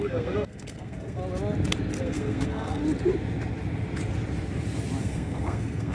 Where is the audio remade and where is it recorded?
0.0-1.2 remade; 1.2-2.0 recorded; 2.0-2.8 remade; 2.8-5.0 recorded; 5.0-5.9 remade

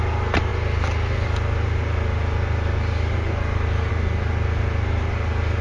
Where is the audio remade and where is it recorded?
0.0-5.6 recorded

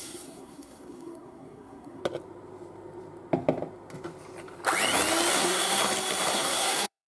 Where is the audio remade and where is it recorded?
0.0-2.0 remade; 2.0-5.3 recorded; 5.3-5.8 remade; 5.8-6.3 recorded; 6.3-7.1 remade

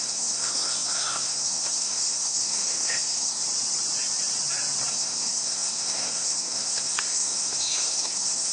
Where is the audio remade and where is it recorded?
0.0-3.4 remade; 3.4-4.9 recorded; 4.9-8.5 remade

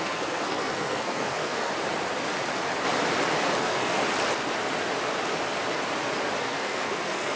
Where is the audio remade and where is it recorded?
0.0-1.7 remade; 1.7-3.6 recorded; 3.6-4.0 remade; 4.0-6.4 recorded; 6.4-7.4 remade

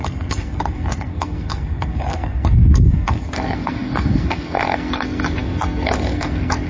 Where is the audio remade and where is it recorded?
0.0-6.7 remade

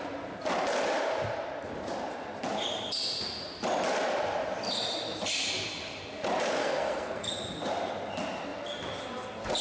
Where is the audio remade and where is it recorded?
0.0-6.6 recorded; 6.6-7.3 remade; 7.3-9.6 recorded